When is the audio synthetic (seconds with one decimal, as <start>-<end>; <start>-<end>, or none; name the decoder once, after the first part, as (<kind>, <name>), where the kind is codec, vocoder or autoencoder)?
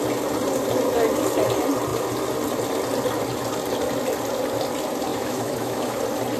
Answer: 5.1-6.0 (autoencoder, DAC-VAE)